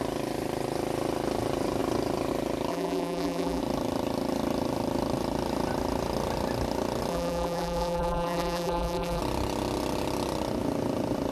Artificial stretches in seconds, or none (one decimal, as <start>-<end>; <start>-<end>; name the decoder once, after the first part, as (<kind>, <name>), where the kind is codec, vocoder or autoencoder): 2.7-3.6 (vocoder, BigVGAN v2); 7.1-9.2